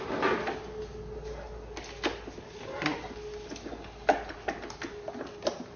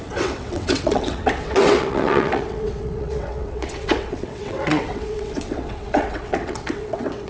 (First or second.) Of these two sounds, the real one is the first